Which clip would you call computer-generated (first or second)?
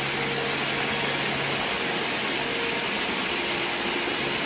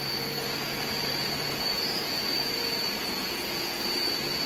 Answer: second